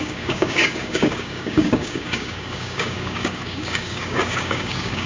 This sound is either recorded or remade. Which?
remade